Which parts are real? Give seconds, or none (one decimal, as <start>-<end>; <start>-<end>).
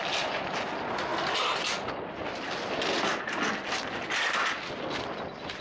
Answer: 0.0-5.6